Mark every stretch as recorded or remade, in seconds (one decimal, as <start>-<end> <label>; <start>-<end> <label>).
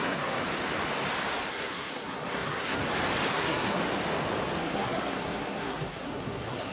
0.0-0.4 remade; 0.4-1.5 recorded; 1.5-2.8 remade; 2.8-3.3 recorded; 3.3-3.8 remade; 3.8-4.6 recorded; 4.6-6.7 remade